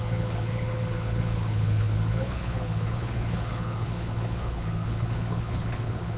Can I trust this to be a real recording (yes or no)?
no